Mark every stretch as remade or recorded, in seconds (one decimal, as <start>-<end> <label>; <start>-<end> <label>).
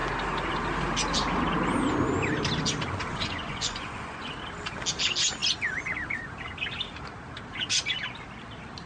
0.0-3.1 recorded; 3.1-4.3 remade; 4.3-8.9 recorded